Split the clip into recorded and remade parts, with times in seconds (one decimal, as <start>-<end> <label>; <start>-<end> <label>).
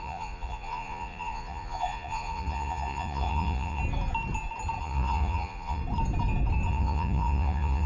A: 0.0-3.8 remade; 3.8-4.8 recorded; 4.8-5.8 remade; 5.8-6.7 recorded; 6.7-7.9 remade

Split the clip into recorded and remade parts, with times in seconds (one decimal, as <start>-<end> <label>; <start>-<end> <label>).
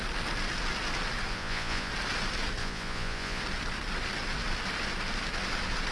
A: 0.0-1.3 recorded; 1.3-1.9 remade; 1.9-2.6 recorded; 2.6-3.4 remade; 3.4-5.9 recorded